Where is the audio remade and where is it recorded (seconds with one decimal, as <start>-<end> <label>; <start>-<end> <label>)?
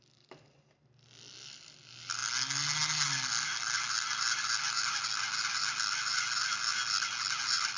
0.0-7.8 recorded